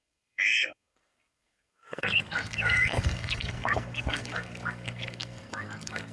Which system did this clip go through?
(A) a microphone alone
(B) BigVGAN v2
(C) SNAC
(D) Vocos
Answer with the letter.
C